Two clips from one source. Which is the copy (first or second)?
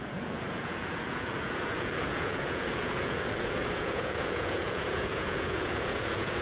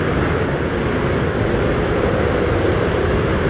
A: first